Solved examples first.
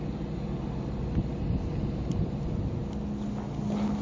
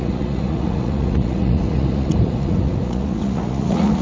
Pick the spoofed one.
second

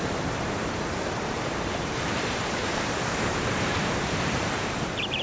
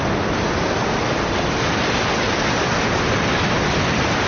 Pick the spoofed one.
first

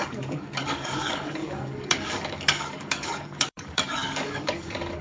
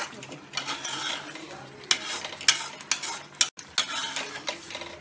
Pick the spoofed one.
first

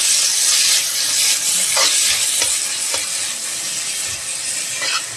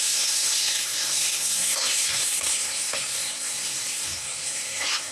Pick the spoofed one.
second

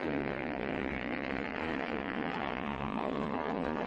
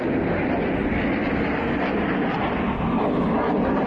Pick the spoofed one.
first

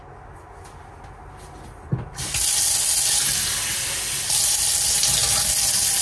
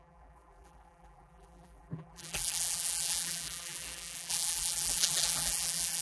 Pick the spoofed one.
second